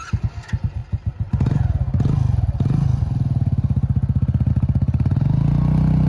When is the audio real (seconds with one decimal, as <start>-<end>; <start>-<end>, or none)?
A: 0.0-6.1